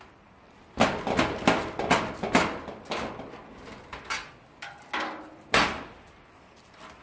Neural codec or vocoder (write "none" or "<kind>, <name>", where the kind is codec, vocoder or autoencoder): none